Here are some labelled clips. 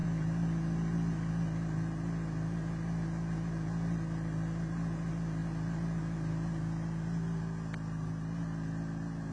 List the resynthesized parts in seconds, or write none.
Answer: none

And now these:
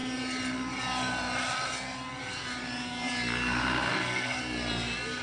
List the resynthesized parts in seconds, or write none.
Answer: 3.9-4.4 (codec, SNAC)

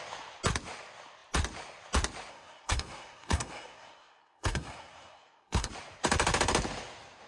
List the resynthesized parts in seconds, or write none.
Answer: 2.3-5.7 (codec, SNAC)

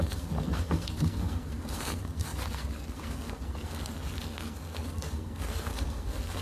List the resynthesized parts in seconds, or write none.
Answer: 0.0-6.4 (codec, SNAC)

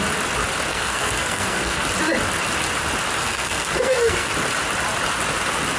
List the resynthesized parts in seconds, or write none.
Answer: 0.7-1.8 (codec, SNAC); 3.2-4.3

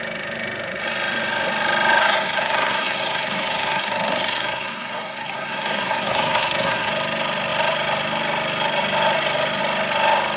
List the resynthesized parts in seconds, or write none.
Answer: 2.0-6.9 (codec, SNAC)

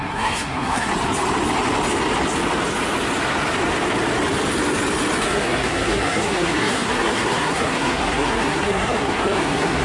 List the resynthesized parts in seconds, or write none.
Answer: 0.0-0.9 (codec, SNAC); 5.2-9.8